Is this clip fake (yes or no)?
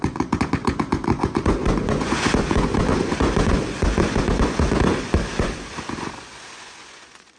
yes